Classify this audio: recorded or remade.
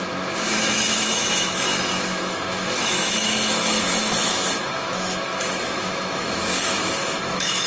remade